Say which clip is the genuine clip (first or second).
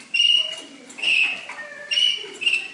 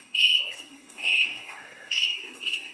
first